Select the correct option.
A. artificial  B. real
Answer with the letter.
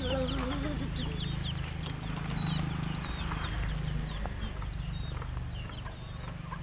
B